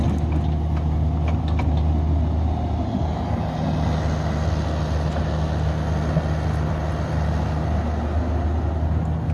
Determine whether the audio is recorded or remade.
recorded